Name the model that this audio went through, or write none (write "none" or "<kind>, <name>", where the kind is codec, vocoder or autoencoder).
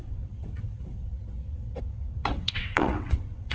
vocoder, WaveNeXt